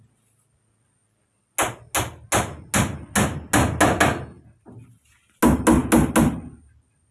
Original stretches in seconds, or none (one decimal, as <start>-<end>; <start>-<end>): 0.0-7.1

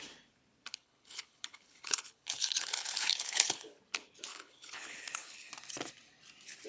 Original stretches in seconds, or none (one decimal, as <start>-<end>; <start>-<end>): 0.0-0.7; 3.8-4.3; 5.5-6.7

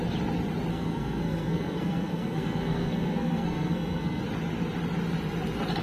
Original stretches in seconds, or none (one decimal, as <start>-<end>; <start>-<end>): 0.0-0.7; 4.2-5.8

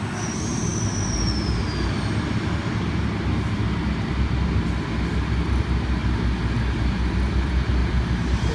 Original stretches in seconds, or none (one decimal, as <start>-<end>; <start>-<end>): 0.0-7.8

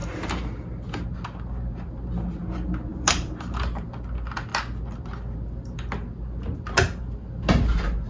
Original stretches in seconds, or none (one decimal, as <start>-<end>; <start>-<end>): 0.0-2.9; 3.9-8.1